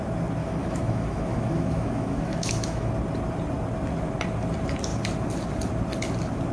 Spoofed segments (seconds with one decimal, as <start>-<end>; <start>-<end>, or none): 0.4-2.9